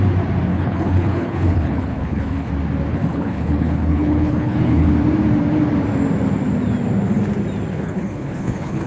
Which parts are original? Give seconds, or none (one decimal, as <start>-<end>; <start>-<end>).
0.0-0.5; 2.5-2.9; 4.9-7.7